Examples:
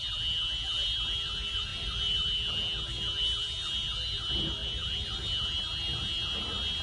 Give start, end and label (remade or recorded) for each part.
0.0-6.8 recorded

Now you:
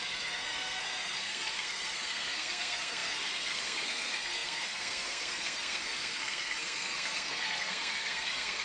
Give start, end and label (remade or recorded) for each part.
0.0-8.6 remade

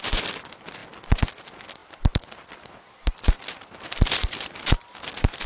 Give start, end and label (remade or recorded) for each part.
0.0-1.8 recorded; 1.8-5.1 remade; 5.1-5.5 recorded

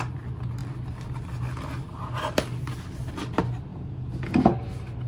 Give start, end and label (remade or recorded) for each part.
0.0-3.7 recorded; 3.7-4.3 remade; 4.3-5.1 recorded